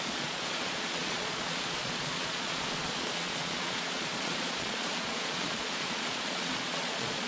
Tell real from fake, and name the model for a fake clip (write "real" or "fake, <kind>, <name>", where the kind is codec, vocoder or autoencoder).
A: fake, vocoder, Vocos